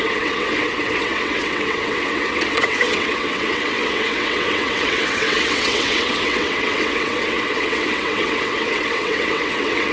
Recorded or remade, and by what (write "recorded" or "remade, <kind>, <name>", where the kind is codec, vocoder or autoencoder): remade, vocoder, WaveNeXt